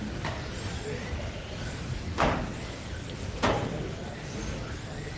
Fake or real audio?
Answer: real